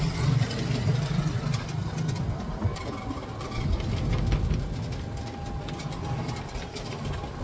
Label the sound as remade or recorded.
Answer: recorded